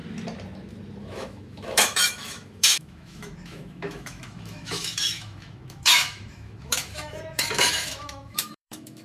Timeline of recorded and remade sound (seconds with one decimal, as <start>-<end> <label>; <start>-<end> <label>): 0.0-1.0 recorded; 1.0-9.0 remade